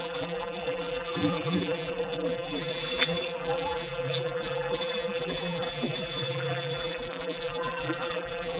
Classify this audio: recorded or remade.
remade